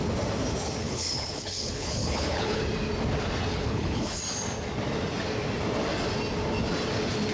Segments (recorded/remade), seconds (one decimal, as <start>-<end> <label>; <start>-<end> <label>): 0.0-0.8 recorded; 0.8-2.6 remade; 2.6-3.5 recorded; 3.5-4.2 remade; 4.2-7.3 recorded